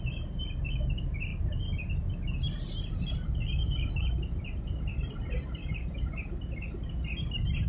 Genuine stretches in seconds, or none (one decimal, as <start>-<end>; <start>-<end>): 0.0-7.7